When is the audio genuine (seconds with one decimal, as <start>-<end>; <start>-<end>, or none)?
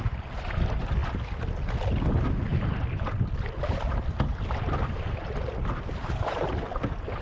0.0-7.2